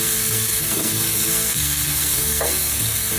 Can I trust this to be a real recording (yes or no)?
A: no